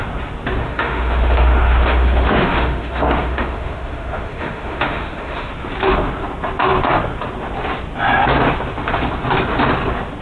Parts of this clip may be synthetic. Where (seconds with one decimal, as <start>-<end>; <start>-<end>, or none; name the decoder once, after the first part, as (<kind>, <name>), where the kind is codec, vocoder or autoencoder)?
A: 0.6-5.5 (autoencoder, DAC-VAE)